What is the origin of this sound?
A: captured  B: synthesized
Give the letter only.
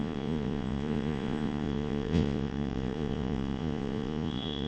B